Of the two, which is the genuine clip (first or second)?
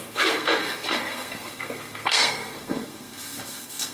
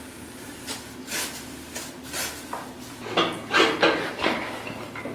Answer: second